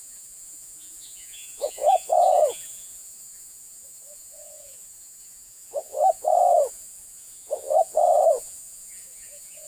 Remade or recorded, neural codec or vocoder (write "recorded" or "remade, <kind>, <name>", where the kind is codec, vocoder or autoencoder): remade, vocoder, Vocos